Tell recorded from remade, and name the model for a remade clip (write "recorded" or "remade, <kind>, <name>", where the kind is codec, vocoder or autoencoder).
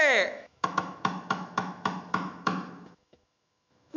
remade, autoencoder, DAC-VAE